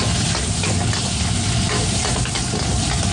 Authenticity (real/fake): real